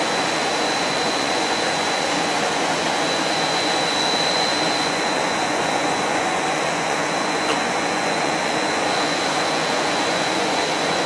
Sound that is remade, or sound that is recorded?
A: remade